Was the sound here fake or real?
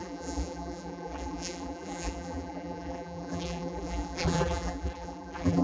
fake